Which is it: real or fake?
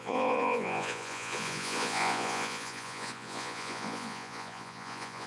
fake